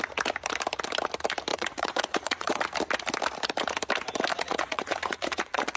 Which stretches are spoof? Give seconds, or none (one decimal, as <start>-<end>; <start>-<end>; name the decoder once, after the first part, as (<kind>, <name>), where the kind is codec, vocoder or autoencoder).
1.5-2.6 (vocoder, Vocos); 4.3-5.8